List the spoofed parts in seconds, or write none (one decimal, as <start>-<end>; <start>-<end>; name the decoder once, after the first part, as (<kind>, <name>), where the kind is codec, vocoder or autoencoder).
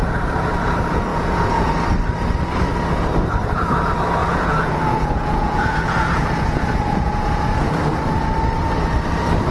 1.1-1.7 (vocoder, Vocos); 4.2-7.8